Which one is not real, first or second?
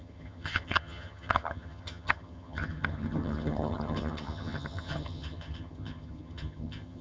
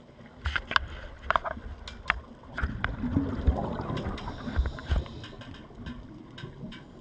first